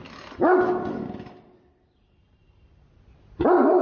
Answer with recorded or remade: recorded